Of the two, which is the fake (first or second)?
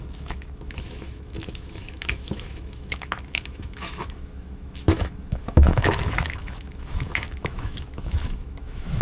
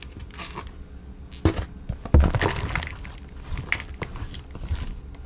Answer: first